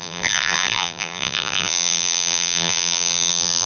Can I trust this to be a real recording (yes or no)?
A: no